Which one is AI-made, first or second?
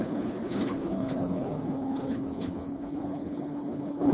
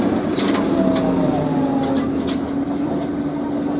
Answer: first